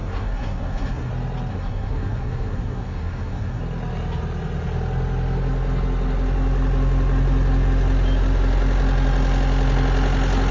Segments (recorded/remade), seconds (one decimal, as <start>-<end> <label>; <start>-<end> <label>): 0.0-1.1 remade; 1.1-1.5 recorded; 1.5-3.6 remade; 3.6-10.5 recorded